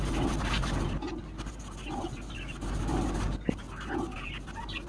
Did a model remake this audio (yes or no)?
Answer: no